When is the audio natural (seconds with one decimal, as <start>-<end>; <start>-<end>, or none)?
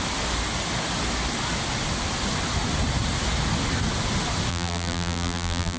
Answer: 0.0-4.5